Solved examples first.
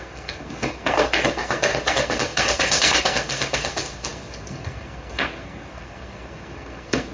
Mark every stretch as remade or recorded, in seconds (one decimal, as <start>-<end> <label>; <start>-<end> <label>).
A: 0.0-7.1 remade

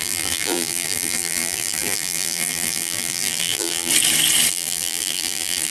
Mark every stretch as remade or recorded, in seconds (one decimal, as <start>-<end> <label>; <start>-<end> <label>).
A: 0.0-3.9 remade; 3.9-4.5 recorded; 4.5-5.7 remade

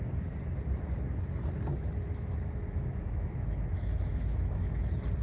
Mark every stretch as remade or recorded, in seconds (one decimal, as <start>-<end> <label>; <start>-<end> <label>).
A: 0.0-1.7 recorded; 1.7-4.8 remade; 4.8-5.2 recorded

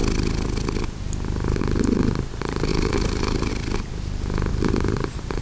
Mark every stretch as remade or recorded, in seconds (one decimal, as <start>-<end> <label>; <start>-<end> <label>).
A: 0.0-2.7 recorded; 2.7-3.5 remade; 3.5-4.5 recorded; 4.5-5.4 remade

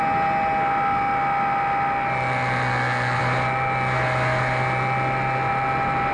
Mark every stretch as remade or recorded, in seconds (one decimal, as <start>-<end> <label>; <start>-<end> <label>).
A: 0.0-6.1 recorded